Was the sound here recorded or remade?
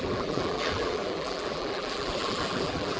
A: remade